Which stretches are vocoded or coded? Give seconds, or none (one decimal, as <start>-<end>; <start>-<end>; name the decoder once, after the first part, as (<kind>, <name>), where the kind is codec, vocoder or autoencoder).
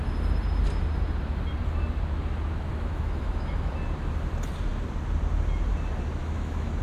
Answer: 2.7-3.7 (autoencoder, DAC-VAE); 6.2-6.8